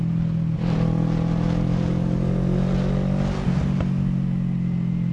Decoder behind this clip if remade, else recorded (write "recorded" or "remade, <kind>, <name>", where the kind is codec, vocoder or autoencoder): recorded